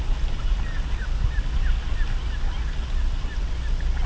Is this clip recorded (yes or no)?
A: yes